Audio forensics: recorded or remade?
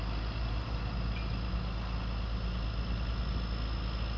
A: recorded